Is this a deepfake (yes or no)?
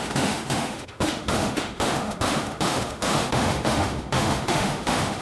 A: yes